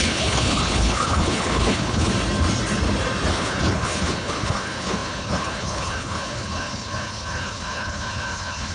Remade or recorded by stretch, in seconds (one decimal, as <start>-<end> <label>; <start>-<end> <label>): 0.0-2.1 remade; 2.1-3.3 recorded; 3.3-8.7 remade